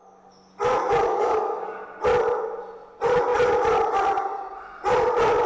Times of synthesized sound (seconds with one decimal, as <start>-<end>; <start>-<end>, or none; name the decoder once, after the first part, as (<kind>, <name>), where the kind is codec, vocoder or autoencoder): 1.1-1.8 (codec, DAC)